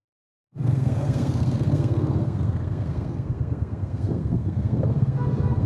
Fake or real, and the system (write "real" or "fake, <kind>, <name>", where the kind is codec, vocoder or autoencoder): fake, codec, SNAC